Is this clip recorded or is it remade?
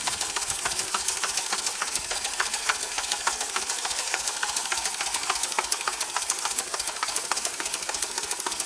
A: remade